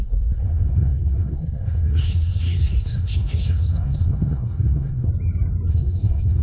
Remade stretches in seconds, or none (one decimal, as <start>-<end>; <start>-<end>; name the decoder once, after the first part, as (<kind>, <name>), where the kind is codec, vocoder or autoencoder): 0.0-5.1 (codec, SNAC); 5.7-6.4